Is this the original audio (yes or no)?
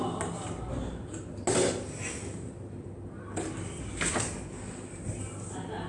yes